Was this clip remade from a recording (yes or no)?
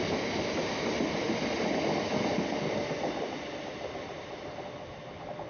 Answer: no